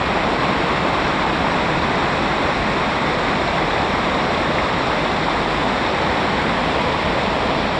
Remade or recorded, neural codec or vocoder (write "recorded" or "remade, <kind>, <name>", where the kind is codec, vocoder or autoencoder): recorded